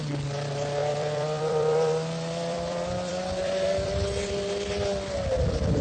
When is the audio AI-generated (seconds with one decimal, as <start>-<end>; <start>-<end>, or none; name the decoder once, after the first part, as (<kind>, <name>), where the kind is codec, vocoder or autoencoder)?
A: 0.8-4.3 (vocoder, BigVGAN v2)